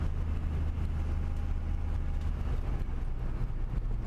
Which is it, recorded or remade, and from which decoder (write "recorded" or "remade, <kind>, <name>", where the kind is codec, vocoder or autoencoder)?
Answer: recorded